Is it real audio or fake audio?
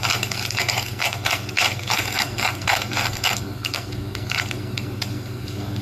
fake